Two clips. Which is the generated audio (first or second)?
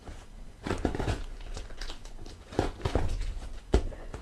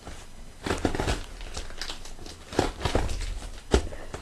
first